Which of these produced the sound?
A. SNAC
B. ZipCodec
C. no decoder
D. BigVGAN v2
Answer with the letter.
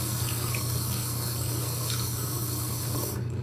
A